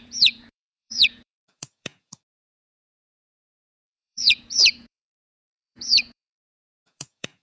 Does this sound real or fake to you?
fake